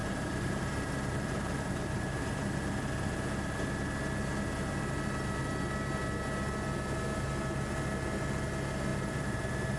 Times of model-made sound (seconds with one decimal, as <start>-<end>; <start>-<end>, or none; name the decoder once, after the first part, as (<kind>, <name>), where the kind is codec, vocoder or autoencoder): 0.0-2.4 (vocoder, BigVGAN v2); 8.9-9.8